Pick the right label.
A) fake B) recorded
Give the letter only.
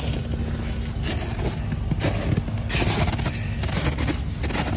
B